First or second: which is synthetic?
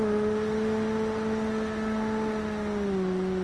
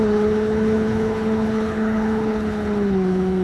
second